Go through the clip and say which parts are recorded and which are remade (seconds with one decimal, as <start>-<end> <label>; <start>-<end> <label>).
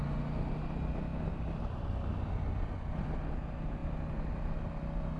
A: 0.0-5.2 recorded